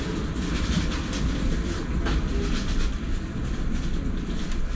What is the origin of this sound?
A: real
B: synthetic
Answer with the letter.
A